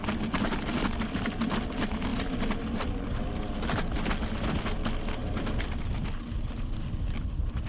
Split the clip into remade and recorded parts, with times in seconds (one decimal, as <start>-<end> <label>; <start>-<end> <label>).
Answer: 0.0-7.7 recorded